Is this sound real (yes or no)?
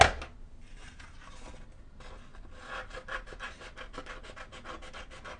yes